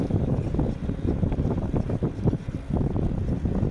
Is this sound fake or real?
real